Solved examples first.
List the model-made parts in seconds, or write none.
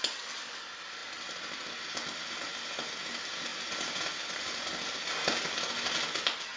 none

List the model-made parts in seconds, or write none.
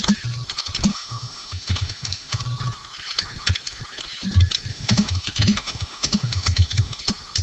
0.9-2.4; 4.7-7.0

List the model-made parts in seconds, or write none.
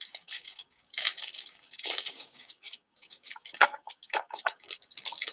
0.0-5.3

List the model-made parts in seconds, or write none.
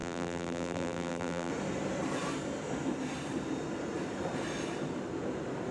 0.0-1.5